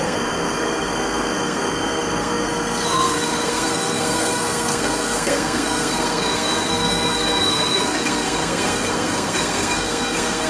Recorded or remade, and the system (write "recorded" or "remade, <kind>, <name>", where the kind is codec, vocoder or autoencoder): remade, codec, SNAC